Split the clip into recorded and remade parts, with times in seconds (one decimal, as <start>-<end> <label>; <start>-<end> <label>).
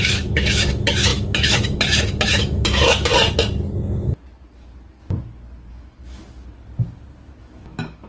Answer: 0.0-3.1 remade; 3.1-5.7 recorded; 5.7-6.2 remade; 6.2-7.4 recorded; 7.4-8.1 remade